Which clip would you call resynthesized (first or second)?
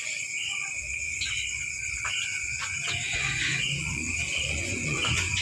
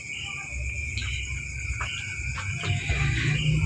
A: first